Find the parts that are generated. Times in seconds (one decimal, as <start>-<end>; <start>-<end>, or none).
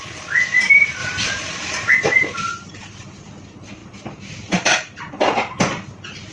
1.0-1.9; 2.5-3.3